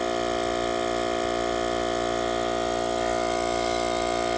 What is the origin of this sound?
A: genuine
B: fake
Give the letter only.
A